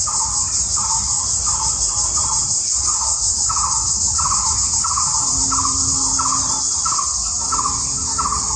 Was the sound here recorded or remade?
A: recorded